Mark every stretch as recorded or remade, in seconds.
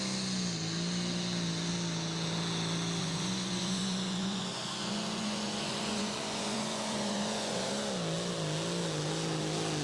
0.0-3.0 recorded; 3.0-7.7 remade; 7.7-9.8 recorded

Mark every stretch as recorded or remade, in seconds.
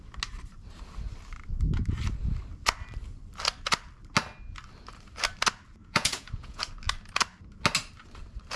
0.0-5.8 recorded; 5.8-6.6 remade; 6.6-8.6 recorded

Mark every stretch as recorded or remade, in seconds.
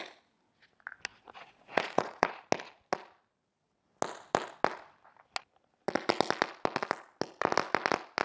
0.0-1.1 recorded; 1.1-2.3 remade; 2.3-8.2 recorded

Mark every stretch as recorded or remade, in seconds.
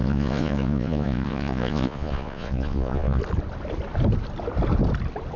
0.0-3.2 remade; 3.2-5.4 recorded